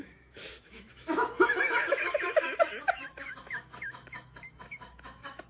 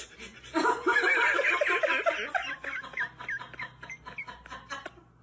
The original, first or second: second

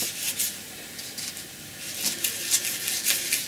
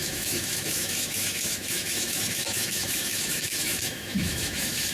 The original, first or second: first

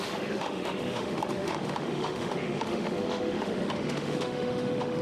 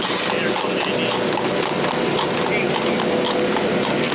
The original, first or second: second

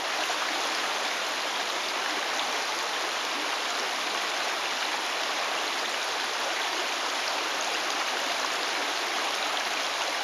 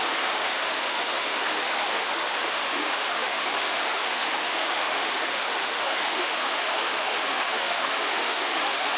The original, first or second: first